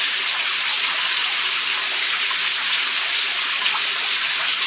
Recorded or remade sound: recorded